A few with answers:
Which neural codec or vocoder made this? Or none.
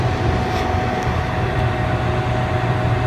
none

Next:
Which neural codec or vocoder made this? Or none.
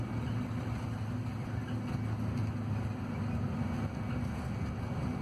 none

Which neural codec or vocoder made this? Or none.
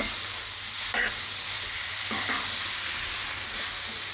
none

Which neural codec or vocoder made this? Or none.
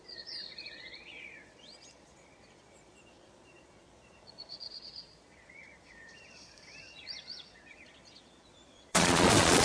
vocoder, Vocos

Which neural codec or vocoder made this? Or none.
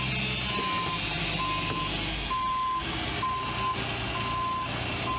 none